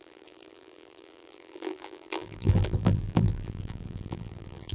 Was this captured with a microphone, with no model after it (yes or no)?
no